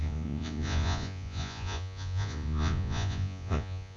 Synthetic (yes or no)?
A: yes